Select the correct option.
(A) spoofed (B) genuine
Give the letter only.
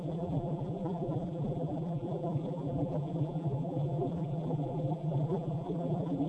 A